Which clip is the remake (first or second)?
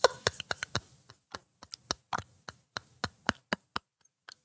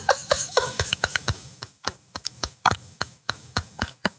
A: second